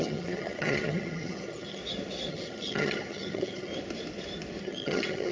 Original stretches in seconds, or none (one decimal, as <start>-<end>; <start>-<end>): 1.8-2.3; 3.7-4.6